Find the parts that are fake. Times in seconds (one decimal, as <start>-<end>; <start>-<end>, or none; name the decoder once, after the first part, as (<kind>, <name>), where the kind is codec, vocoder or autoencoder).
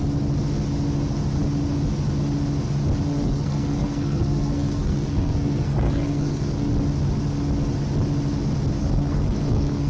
3.1-6.7 (codec, SNAC); 8.8-9.9